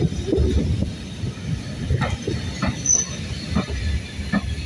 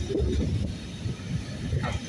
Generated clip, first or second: second